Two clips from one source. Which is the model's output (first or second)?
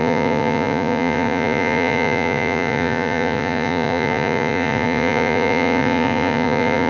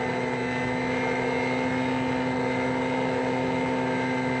first